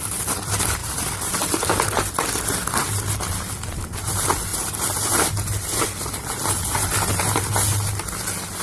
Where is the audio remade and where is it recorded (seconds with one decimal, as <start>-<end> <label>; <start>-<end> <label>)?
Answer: 0.0-0.8 recorded; 0.8-1.3 remade; 1.3-8.6 recorded